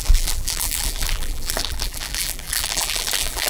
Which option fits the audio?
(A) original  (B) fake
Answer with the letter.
B